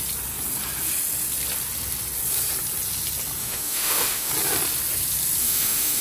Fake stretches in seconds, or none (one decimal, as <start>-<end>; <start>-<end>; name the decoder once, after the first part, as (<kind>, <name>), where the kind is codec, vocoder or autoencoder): 3.4-4.3 (autoencoder, DAC-VAE); 5.4-6.0